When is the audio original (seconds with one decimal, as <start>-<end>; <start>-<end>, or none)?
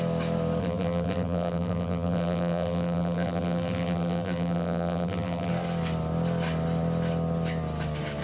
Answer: 0.0-0.6; 5.5-8.2